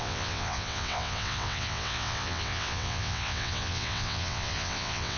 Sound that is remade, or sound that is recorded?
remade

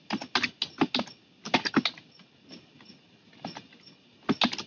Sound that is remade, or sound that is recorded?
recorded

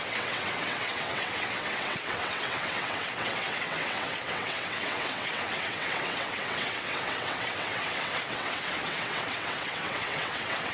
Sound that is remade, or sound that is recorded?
remade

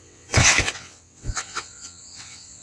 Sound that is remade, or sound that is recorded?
remade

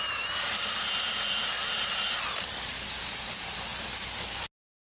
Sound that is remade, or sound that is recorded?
recorded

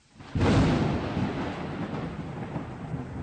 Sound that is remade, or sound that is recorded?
recorded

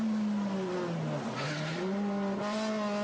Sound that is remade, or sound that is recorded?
recorded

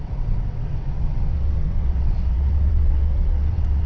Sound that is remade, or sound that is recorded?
remade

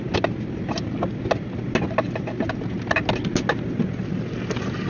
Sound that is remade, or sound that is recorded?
recorded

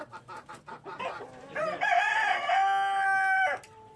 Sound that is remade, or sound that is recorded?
recorded